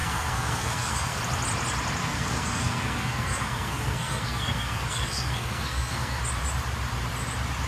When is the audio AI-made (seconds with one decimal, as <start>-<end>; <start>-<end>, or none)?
0.0-1.2; 2.0-6.2